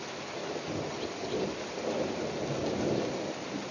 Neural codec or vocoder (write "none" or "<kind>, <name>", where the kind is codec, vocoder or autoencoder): none